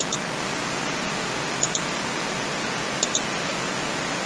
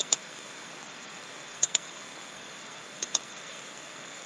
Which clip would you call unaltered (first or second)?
first